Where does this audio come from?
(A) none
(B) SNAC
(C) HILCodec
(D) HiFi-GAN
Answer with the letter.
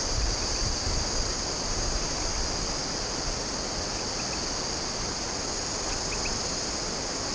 A